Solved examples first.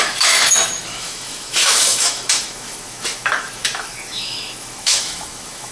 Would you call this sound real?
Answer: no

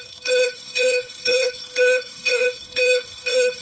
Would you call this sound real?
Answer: no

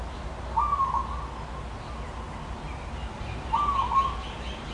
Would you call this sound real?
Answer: yes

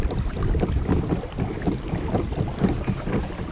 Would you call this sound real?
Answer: no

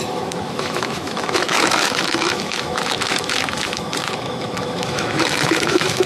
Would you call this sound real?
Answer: no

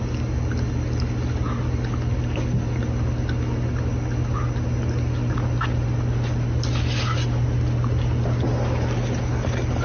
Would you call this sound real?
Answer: yes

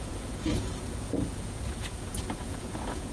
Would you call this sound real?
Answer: no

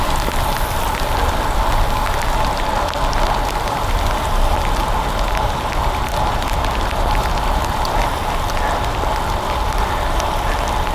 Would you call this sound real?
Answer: yes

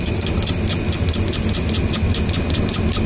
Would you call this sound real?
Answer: yes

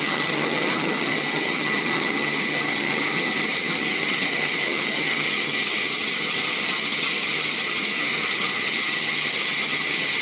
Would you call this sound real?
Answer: no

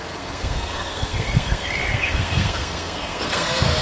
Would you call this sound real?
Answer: no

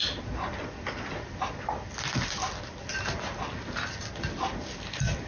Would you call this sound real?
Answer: yes